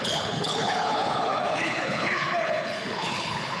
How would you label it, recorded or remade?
remade